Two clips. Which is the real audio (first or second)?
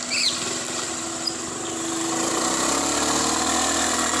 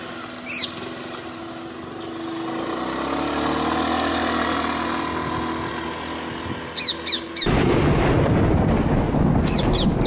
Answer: second